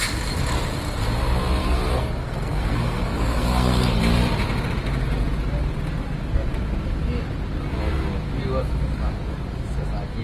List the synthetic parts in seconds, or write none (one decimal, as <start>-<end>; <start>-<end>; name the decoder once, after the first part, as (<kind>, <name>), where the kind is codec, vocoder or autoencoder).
1.6-4.0 (codec, SNAC)